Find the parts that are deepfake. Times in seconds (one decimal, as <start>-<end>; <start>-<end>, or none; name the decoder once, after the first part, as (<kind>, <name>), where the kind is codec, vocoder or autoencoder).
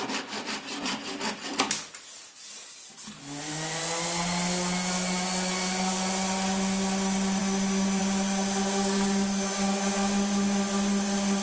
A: none